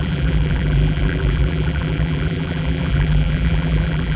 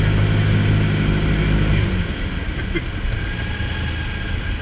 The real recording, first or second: second